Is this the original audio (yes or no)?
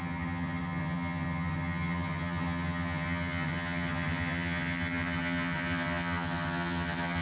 no